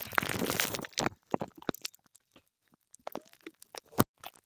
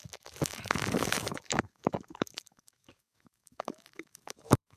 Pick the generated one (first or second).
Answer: second